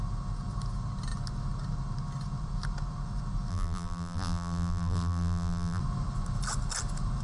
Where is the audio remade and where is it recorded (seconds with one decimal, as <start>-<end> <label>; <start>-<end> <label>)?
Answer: 0.0-3.5 recorded; 3.5-5.8 remade; 5.8-7.2 recorded